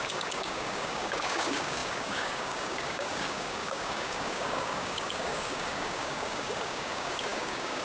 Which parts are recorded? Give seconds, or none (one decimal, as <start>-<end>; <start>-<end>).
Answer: none